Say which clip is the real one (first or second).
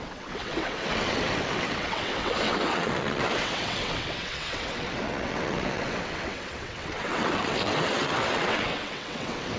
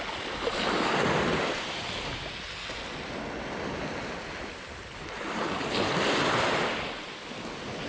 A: second